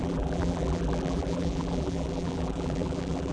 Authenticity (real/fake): fake